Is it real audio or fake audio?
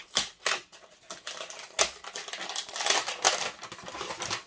real